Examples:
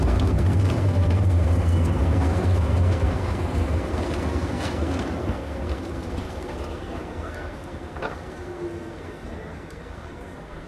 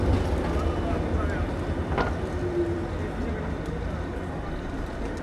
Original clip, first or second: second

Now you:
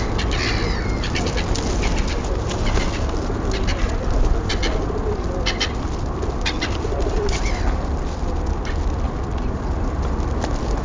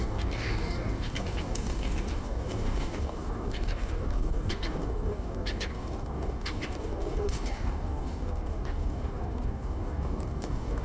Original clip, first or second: first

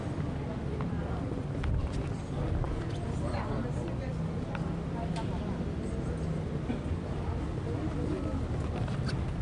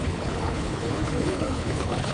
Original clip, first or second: first